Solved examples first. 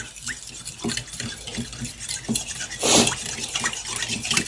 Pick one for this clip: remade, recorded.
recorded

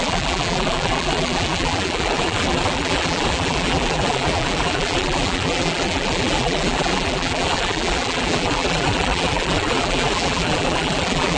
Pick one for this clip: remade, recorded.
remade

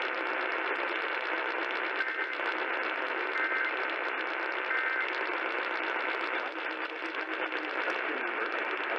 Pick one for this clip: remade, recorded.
recorded